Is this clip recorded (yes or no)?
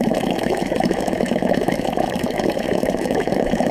no